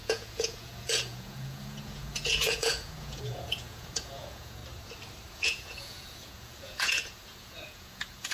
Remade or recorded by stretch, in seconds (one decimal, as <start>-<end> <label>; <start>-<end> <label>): 0.0-4.6 remade; 4.6-5.3 recorded; 5.3-8.3 remade